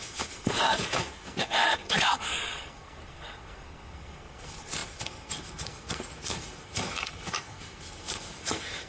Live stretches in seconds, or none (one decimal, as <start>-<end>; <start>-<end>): none